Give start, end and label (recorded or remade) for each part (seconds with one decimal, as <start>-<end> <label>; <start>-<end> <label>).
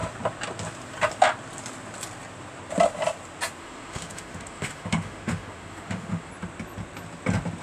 0.0-3.6 recorded; 3.6-6.3 remade; 6.3-7.6 recorded